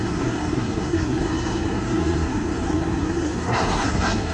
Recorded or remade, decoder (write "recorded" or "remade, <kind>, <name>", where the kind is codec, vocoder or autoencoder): remade, codec, SNAC